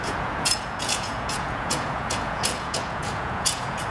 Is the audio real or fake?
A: fake